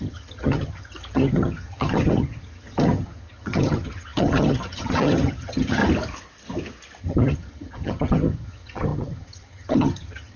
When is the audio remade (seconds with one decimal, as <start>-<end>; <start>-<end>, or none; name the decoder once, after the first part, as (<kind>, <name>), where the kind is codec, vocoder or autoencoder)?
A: 0.0-5.8 (vocoder, HiFi-GAN); 7.0-10.4